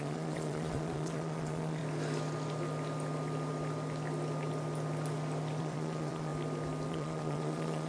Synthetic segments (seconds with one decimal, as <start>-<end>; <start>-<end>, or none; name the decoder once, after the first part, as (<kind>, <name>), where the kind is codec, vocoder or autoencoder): 0.0-1.8 (vocoder, Vocos); 5.6-6.3; 6.9-7.9